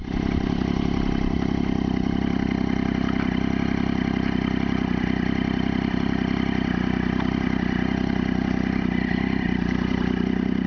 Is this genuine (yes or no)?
yes